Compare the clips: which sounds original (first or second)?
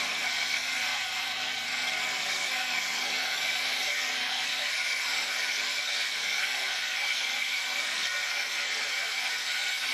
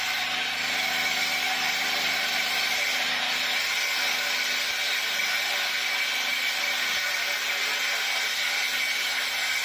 second